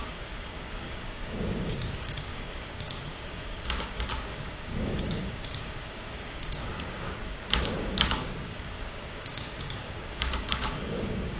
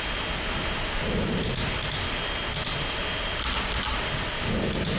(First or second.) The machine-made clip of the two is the first